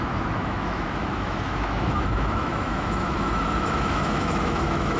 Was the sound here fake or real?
fake